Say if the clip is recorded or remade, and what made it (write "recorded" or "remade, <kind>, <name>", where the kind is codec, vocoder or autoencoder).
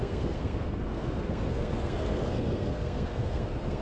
remade, codec, SNAC